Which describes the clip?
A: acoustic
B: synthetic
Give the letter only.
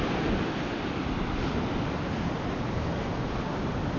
A